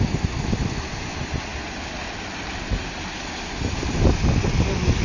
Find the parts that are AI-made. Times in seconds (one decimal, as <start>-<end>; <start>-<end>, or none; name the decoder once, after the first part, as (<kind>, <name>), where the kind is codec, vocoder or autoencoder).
none